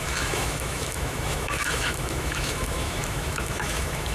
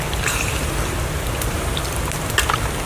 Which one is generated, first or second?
first